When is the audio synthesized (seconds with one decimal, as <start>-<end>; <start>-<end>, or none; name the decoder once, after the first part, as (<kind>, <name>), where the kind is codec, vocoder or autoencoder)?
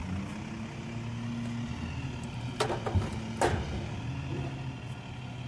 none